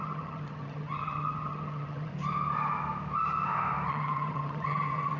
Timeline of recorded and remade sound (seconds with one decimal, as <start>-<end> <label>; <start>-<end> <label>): 0.0-2.1 remade; 2.1-3.9 recorded; 3.9-5.2 remade